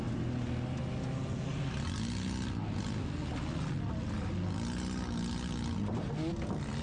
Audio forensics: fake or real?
real